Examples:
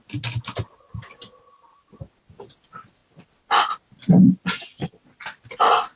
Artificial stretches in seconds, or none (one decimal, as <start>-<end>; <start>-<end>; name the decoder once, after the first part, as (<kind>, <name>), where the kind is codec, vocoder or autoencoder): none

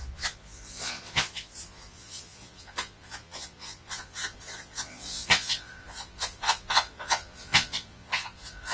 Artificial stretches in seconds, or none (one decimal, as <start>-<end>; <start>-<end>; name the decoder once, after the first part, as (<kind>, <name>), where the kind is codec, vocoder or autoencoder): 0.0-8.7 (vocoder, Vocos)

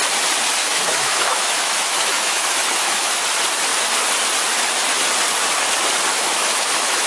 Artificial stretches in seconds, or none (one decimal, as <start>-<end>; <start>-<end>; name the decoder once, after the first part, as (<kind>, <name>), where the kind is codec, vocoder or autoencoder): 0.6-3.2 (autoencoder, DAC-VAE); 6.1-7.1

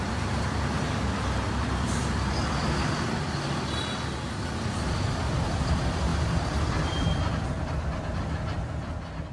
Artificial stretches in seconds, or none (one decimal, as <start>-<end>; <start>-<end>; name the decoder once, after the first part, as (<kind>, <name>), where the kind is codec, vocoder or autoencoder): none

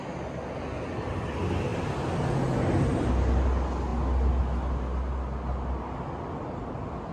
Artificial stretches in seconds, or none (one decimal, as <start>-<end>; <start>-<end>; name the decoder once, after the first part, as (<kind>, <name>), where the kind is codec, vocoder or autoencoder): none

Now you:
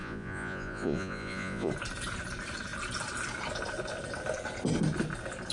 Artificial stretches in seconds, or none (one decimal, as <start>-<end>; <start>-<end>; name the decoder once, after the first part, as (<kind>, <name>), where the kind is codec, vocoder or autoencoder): 0.0-1.7 (vocoder, Vocos)

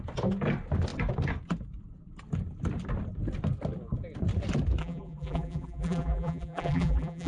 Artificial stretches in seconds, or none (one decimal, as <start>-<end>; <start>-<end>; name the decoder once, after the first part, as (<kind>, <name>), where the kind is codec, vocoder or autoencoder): 4.8-7.3 (vocoder, BigVGAN v2)